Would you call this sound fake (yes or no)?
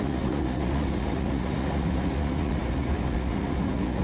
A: yes